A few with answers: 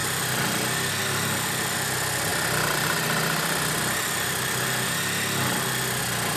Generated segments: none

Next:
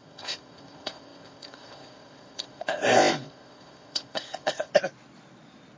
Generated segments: 0.0-4.7 (codec, ZipCodec)

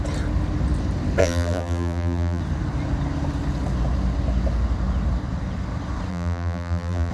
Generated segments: 1.2-2.4 (vocoder, BigVGAN v2); 6.1-7.1